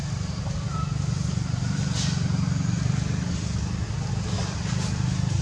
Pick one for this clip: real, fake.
real